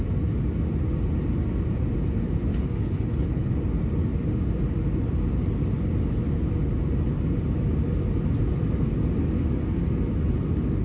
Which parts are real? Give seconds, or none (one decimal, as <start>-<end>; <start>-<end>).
0.0-2.5; 3.5-10.8